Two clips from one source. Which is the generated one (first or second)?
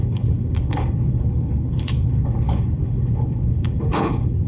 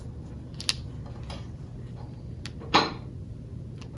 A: first